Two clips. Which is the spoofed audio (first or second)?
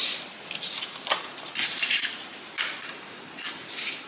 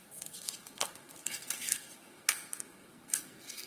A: second